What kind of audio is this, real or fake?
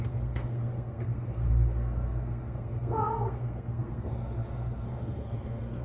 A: fake